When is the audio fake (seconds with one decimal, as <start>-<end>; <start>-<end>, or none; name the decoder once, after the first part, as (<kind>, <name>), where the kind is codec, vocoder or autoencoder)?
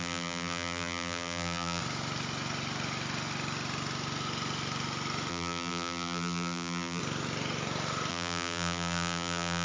0.0-1.8 (vocoder, BigVGAN v2); 5.3-7.0; 8.1-9.6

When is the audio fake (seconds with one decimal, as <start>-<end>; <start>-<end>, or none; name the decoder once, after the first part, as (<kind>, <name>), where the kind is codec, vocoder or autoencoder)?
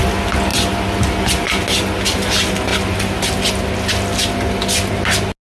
none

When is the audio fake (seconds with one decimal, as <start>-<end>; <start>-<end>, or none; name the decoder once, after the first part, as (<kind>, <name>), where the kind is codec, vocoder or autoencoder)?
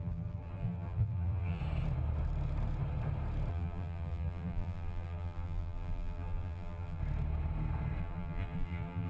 0.0-1.6 (vocoder, BigVGAN v2); 3.5-7.0; 8.0-9.1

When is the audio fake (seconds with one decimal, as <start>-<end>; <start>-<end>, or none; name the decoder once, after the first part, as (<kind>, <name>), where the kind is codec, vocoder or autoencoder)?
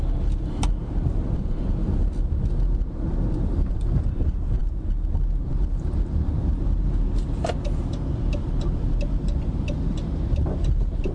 none